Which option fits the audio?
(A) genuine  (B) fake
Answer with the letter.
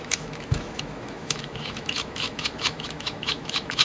B